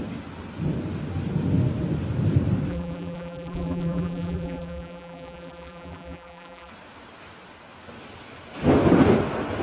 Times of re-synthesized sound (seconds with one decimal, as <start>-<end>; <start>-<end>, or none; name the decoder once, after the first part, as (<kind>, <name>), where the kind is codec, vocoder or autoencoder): 2.7-6.7 (vocoder, BigVGAN v2)